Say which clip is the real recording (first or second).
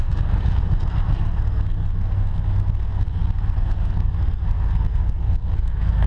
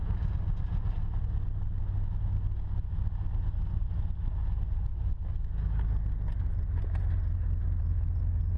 second